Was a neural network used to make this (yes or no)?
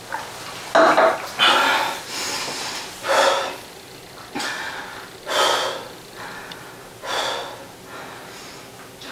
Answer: no